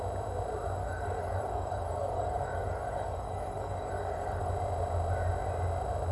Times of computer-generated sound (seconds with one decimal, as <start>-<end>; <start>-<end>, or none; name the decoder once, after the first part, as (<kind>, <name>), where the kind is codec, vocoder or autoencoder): 0.8-4.5 (codec, DAC)